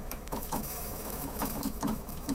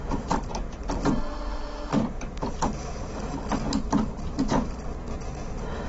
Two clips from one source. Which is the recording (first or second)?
second